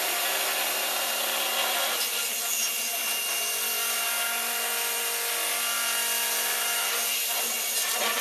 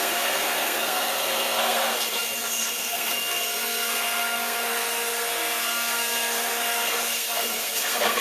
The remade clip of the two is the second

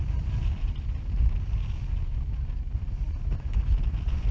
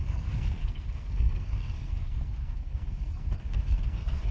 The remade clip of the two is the second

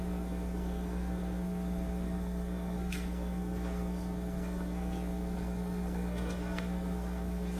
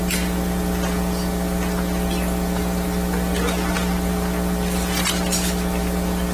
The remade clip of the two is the first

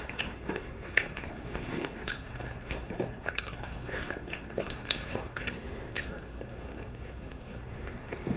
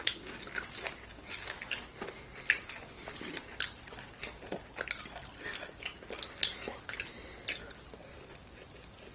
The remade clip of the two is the first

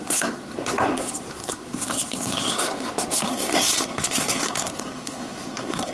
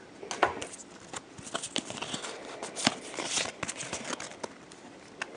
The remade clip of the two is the first